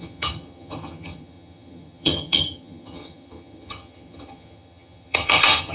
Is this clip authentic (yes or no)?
no